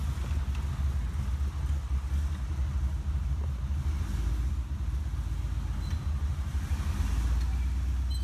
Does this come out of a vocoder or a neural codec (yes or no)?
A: no